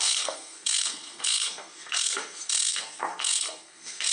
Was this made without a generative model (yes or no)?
no